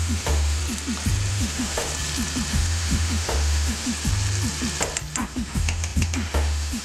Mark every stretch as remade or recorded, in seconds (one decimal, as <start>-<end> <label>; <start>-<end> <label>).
0.0-0.6 remade; 0.6-1.3 recorded; 1.3-1.9 remade; 1.9-2.5 recorded; 2.5-3.9 remade; 3.9-5.2 recorded; 5.2-6.8 remade